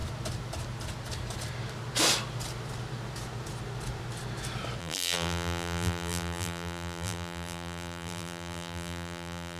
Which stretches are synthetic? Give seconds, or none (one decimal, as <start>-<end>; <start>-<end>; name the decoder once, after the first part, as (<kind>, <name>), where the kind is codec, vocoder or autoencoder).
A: 4.8-9.6 (vocoder, BigVGAN v2)